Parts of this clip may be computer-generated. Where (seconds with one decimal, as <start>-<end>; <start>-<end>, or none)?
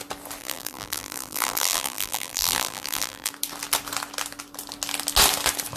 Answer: 0.4-3.3